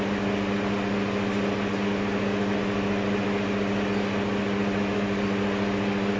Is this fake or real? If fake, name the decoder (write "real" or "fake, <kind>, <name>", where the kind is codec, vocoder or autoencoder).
real